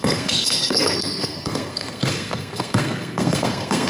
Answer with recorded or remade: remade